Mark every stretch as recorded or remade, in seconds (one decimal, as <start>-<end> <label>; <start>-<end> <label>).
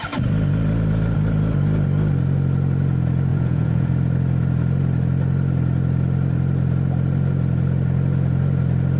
0.0-3.3 recorded; 3.3-3.9 remade; 3.9-9.0 recorded